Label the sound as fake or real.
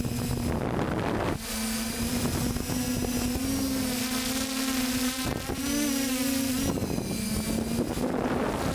real